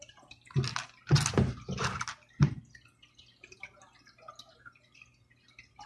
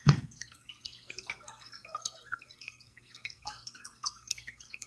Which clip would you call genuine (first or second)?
first